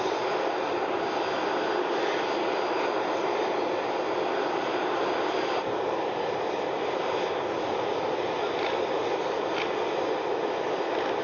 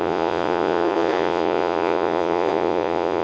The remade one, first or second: second